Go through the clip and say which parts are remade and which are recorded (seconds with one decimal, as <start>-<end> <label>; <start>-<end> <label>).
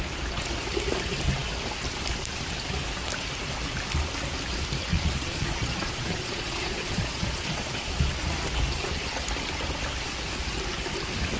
0.0-4.9 recorded; 4.9-7.9 remade; 7.9-11.4 recorded